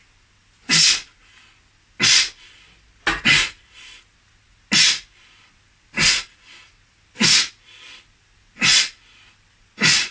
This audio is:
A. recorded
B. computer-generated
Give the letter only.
A